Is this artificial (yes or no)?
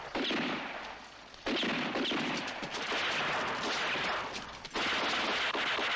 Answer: no